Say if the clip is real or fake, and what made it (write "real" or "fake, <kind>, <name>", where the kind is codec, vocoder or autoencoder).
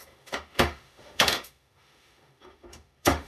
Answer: fake, autoencoder, DAC-VAE